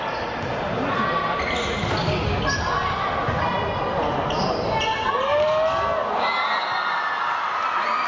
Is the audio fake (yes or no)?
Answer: no